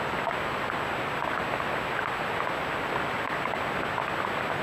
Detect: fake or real real